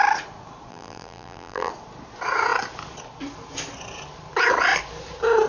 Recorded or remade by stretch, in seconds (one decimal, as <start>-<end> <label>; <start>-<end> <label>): 0.0-0.7 recorded; 0.7-1.7 remade; 1.7-5.5 recorded